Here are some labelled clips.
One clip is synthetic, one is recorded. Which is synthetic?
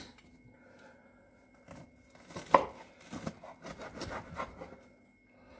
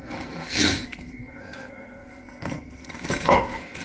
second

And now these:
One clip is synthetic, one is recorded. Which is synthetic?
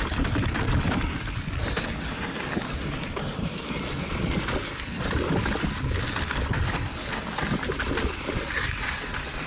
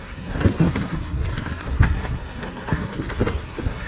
second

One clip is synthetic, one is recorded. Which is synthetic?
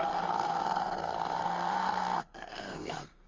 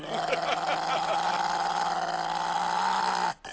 first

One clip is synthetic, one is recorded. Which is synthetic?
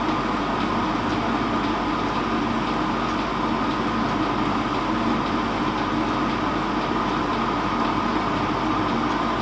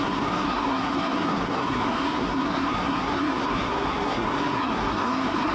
second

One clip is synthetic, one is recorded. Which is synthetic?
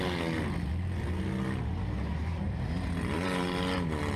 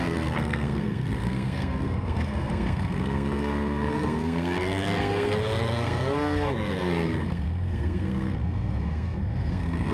second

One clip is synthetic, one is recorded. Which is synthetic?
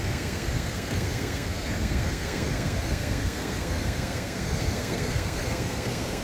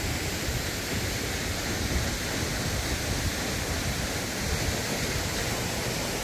first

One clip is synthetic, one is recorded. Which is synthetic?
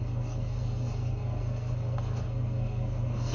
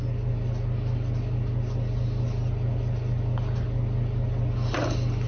first